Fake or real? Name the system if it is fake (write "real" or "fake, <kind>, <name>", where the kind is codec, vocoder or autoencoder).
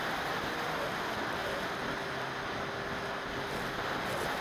real